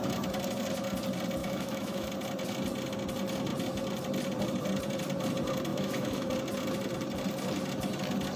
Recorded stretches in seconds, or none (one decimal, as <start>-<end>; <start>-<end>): 0.0-1.4; 2.1-5.7; 6.3-8.4